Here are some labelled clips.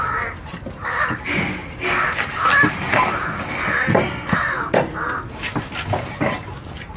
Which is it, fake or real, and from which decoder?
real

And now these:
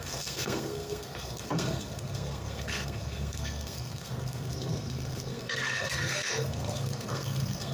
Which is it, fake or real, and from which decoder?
fake, codec, SNAC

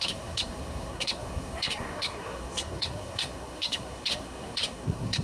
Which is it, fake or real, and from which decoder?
fake, codec, SNAC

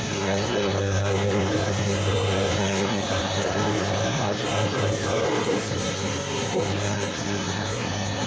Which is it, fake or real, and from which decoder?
fake, codec, SNAC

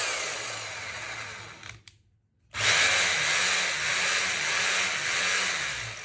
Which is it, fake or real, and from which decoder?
real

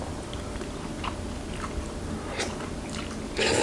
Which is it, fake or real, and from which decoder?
real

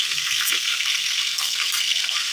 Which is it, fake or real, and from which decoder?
fake, codec, SNAC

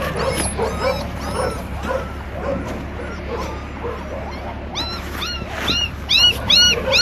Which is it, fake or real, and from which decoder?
real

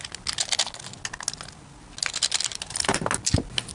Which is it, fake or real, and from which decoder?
real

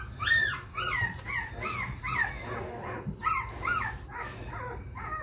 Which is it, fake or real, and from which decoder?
real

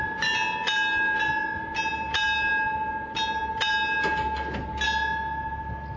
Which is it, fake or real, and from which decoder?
real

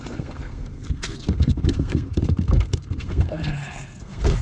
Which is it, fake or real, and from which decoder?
fake, codec, SNAC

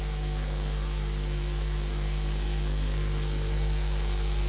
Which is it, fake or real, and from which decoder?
fake, codec, SNAC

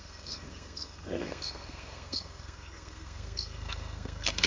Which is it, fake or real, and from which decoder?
fake, codec, SNAC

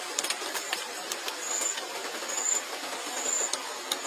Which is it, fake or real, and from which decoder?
real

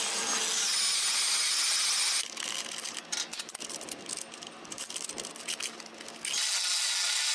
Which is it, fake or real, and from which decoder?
real